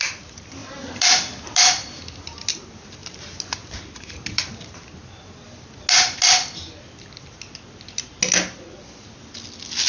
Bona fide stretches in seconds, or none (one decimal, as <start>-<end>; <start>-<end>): 0.0-0.6; 2.0-3.0; 4.4-9.9